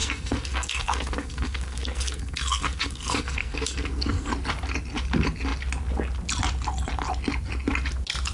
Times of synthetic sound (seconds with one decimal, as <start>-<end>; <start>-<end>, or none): 0.0-4.3